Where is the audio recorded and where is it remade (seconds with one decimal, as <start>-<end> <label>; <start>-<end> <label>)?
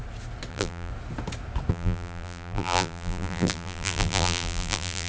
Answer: 0.0-0.5 recorded; 0.5-0.9 remade; 0.9-1.7 recorded; 1.7-5.1 remade